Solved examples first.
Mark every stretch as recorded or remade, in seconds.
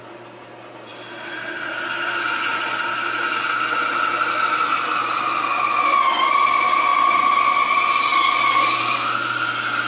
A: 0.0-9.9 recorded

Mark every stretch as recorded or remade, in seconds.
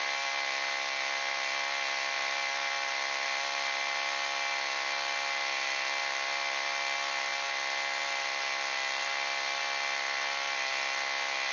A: 0.0-11.5 recorded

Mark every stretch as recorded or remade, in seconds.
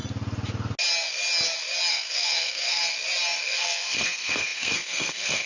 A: 0.0-1.9 recorded; 1.9-2.8 remade; 2.8-3.4 recorded; 3.4-5.5 remade